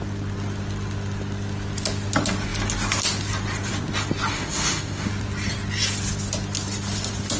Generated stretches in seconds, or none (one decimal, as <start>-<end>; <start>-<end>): 4.3-5.1